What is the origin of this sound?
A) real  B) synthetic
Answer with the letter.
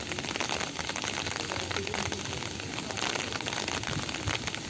A